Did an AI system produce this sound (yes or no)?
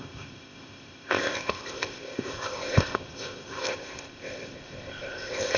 yes